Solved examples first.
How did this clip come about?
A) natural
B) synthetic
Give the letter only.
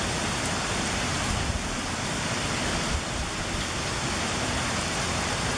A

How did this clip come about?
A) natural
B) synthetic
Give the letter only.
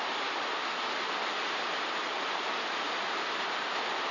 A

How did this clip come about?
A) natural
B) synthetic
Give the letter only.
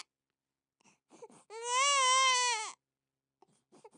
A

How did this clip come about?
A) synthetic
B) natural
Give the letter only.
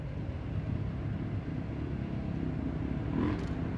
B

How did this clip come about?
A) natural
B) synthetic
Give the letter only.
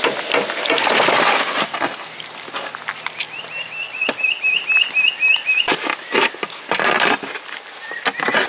A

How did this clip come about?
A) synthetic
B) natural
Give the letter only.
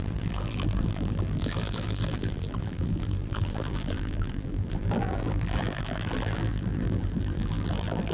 A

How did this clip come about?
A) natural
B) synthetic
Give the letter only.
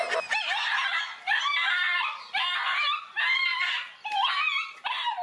A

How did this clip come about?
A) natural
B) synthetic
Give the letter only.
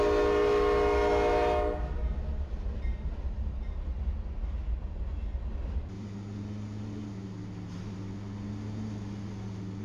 A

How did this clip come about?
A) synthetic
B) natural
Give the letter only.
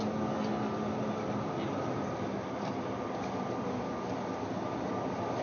B